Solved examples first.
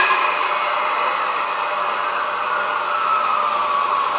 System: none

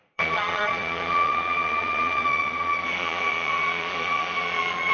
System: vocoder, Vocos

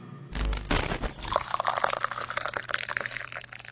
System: none